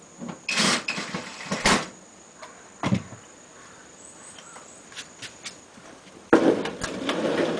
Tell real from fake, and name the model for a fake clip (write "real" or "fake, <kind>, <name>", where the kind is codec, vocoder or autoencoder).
fake, vocoder, BigVGAN v2